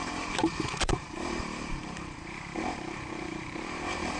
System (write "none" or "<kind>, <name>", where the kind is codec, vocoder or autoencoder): vocoder, BigVGAN v2